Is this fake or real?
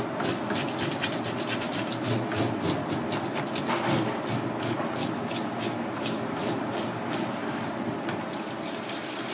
real